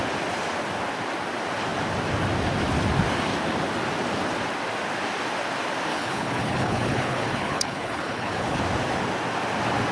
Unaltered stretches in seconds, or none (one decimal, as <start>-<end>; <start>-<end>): 0.0-5.9; 8.6-9.9